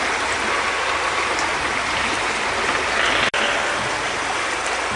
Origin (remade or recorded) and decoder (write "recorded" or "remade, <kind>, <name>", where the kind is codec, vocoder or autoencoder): recorded